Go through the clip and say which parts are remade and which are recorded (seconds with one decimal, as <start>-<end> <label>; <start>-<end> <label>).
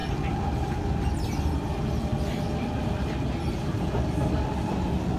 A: 0.0-5.2 recorded